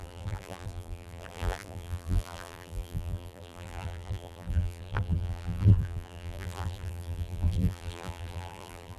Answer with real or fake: fake